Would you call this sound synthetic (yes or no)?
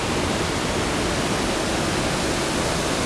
no